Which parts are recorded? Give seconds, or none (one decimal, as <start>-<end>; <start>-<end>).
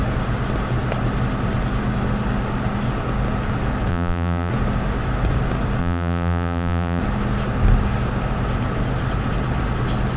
0.0-3.9; 4.5-5.8; 7.0-10.2